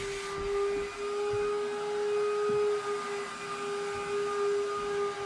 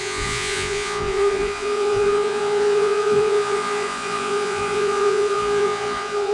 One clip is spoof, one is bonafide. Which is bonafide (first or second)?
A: first